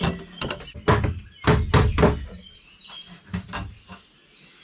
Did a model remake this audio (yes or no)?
no